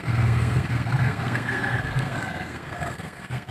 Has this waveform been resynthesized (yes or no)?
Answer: yes